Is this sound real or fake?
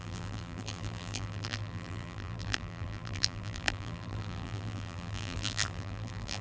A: fake